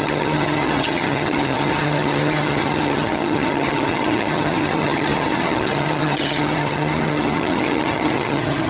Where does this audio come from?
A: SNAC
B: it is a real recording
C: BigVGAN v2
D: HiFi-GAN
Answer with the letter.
D